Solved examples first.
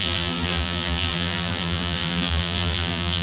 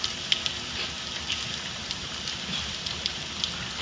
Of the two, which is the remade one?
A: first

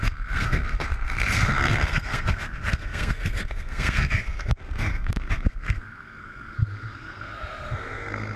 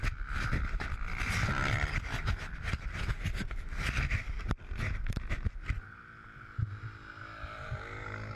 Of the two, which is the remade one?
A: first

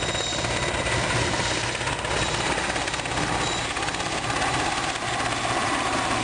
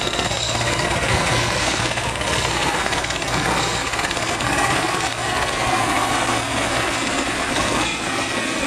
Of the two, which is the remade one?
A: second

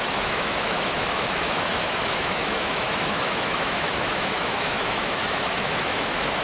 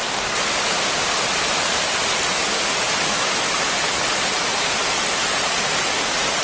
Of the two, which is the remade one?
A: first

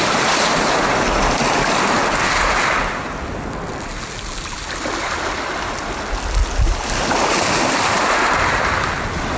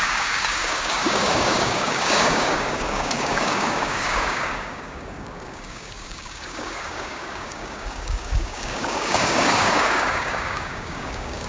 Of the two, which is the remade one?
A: second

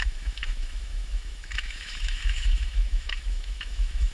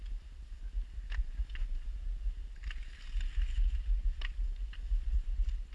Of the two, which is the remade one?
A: first